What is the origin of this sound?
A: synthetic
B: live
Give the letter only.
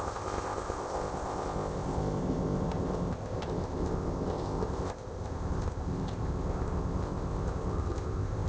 A